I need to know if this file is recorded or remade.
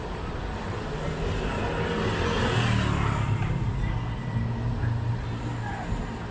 recorded